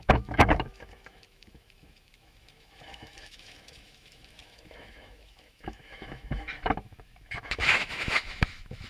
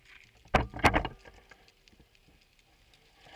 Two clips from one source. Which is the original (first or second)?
second